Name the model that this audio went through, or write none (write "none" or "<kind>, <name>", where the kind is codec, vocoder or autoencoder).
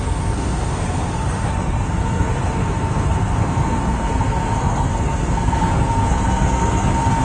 codec, SNAC